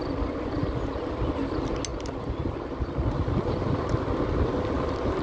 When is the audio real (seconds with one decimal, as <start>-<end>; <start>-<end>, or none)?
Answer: 0.0-5.2

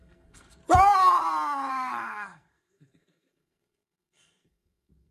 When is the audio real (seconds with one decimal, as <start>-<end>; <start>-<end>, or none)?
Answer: 0.6-1.7

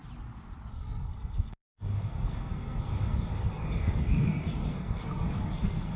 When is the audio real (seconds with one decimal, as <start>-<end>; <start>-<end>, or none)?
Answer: 0.0-0.7

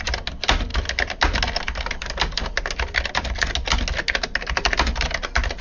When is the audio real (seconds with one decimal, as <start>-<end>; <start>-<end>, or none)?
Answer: 0.0-5.6

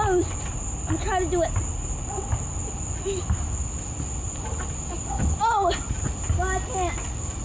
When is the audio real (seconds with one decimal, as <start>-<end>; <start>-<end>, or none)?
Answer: 0.0-7.4

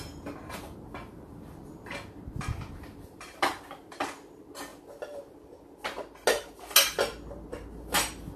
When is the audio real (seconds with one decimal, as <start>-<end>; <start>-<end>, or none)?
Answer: 0.0-8.4

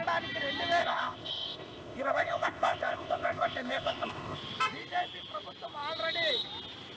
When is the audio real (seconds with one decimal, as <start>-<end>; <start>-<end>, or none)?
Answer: 0.0-0.8; 4.4-7.0

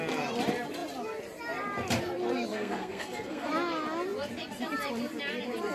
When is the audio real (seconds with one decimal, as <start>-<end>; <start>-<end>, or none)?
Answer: 0.0-2.5; 3.5-5.7